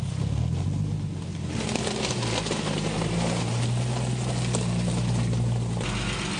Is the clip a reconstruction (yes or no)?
no